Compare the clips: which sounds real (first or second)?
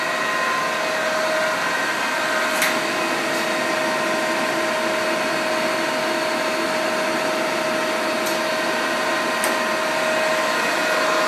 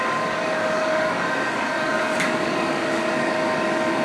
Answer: first